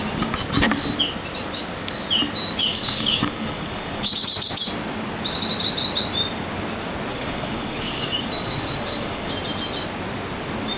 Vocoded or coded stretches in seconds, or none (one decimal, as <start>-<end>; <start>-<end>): 2.7-4.1; 7.1-9.3